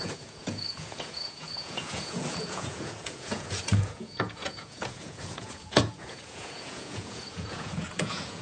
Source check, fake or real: fake